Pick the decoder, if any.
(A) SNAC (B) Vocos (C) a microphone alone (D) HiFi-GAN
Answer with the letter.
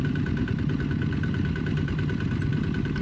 C